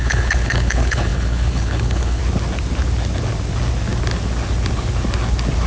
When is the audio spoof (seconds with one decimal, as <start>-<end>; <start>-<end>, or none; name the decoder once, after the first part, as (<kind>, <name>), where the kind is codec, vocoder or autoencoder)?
0.0-2.2 (codec, HILCodec)